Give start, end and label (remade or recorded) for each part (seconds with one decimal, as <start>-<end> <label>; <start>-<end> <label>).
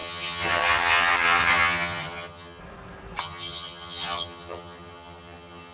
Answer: 0.0-2.6 remade; 2.6-3.2 recorded; 3.2-5.7 remade